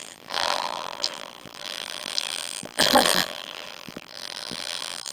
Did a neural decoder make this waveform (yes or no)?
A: yes